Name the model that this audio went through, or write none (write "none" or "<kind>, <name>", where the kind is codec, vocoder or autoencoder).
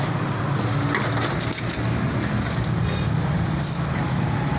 none